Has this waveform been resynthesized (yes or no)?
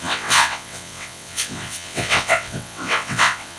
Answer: yes